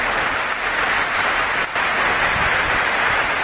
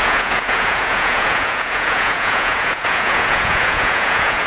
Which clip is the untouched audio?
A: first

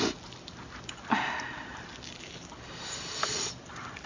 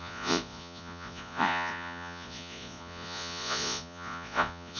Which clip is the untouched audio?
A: first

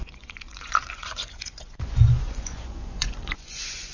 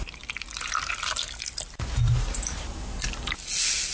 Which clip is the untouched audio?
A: second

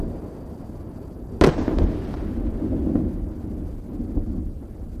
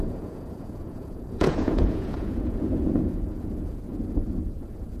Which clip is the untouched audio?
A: first